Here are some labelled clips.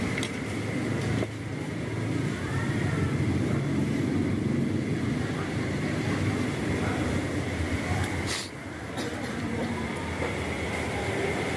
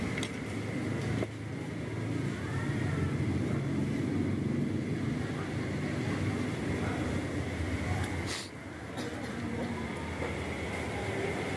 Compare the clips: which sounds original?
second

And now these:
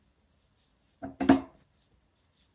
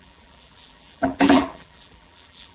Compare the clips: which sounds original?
first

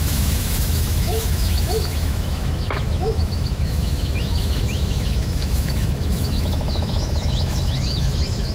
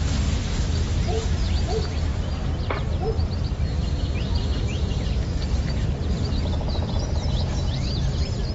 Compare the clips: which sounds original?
second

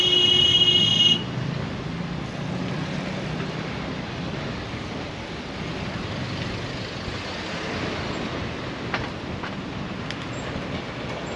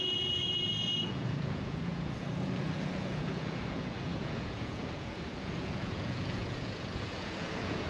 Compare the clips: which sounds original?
first